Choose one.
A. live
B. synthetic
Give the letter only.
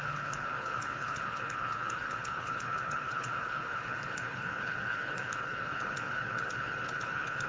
B